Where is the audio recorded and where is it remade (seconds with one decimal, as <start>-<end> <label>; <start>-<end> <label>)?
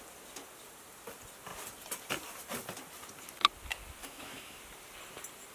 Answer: 0.0-4.0 recorded; 4.0-4.6 remade; 4.6-5.5 recorded